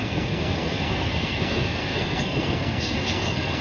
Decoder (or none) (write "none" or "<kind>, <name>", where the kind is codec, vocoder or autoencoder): codec, SNAC